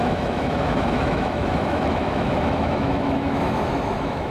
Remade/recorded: remade